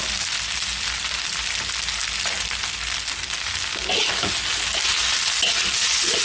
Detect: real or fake real